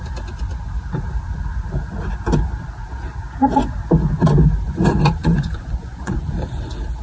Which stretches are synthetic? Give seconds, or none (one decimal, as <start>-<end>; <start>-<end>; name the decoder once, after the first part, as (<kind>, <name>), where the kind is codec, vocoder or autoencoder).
5.2-6.3 (vocoder, Vocos)